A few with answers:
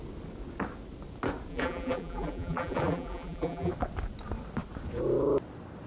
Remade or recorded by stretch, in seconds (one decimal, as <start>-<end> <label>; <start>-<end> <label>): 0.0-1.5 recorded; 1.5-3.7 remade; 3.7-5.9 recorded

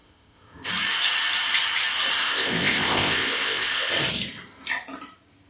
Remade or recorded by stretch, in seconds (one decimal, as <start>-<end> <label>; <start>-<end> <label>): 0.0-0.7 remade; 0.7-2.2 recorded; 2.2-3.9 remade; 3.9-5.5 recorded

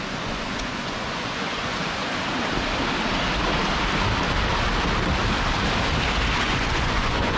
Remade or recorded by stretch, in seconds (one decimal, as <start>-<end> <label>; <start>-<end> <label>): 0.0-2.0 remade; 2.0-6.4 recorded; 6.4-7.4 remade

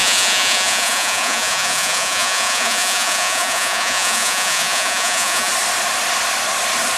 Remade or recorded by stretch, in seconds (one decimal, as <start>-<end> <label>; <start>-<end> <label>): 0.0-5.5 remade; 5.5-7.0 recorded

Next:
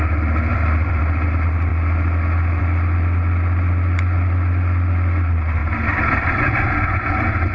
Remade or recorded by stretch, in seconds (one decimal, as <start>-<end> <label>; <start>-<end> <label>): 0.0-0.5 recorded; 0.5-1.0 remade; 1.0-7.5 recorded